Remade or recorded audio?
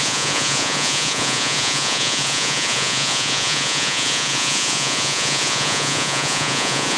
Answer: remade